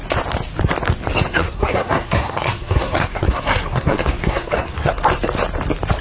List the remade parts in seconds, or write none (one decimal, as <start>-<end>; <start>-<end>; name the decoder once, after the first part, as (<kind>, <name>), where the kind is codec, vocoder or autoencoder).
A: 1.3-4.9 (codec, SNAC)